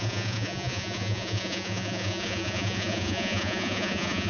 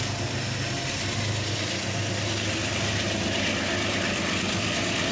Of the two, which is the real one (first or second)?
second